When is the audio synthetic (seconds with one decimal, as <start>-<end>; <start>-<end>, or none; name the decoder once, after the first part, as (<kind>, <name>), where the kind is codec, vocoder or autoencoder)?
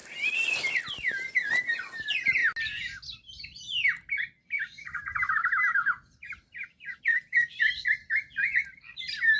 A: 1.6-2.4 (vocoder, BigVGAN v2); 7.0-9.4